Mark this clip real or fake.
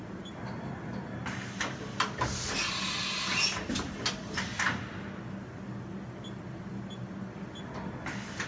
real